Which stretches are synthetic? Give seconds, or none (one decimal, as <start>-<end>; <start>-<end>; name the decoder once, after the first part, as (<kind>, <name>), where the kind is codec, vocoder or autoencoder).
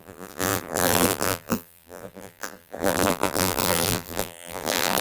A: 0.0-5.0 (vocoder, BigVGAN v2)